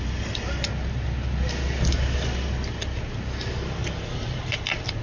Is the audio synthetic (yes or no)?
no